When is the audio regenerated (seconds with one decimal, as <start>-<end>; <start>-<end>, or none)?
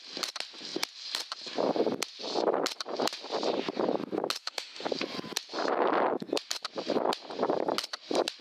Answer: 4.4-4.9